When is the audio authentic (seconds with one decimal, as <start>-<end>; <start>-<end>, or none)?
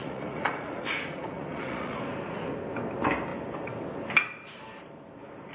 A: 2.0-5.5